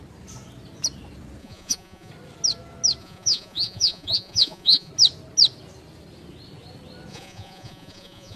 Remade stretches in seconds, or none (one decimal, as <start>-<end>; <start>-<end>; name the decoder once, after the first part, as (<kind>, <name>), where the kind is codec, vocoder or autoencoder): 1.4-2.1 (vocoder, Vocos); 3.0-4.9; 7.1-8.4